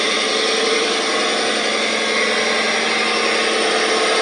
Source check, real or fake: real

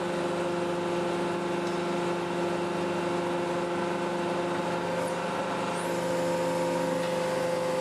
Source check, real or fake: real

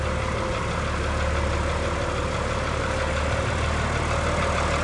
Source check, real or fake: real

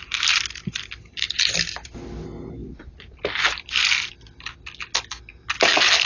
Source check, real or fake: real